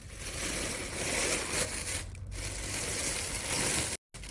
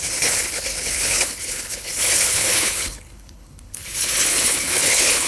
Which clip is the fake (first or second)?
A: second